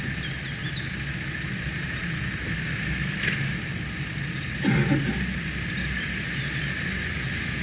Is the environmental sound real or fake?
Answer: real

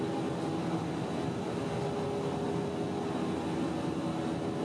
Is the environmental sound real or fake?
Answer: real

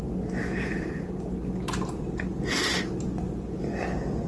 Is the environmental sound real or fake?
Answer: real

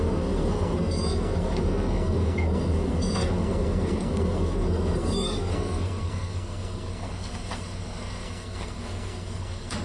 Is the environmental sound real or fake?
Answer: fake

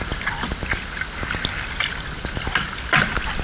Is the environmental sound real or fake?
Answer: real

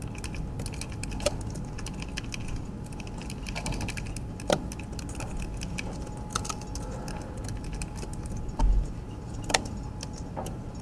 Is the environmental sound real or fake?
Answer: real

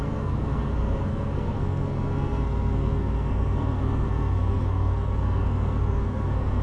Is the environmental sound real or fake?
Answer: fake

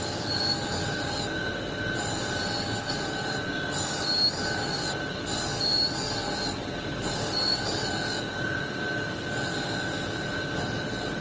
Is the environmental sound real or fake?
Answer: real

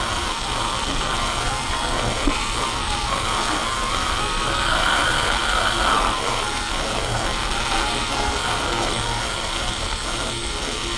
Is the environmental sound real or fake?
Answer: fake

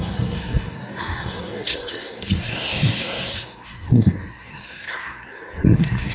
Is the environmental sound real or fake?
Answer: fake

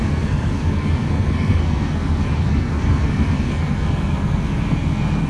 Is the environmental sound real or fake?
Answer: fake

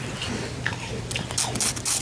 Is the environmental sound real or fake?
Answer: real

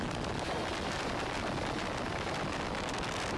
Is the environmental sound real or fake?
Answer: real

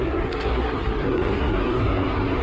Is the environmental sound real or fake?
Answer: fake